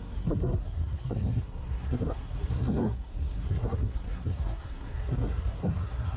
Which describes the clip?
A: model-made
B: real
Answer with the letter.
A